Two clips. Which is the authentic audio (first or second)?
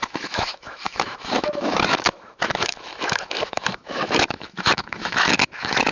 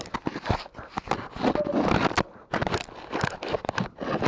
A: second